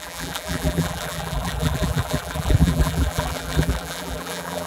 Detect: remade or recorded remade